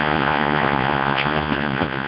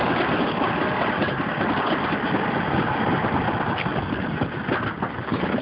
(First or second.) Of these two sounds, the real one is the second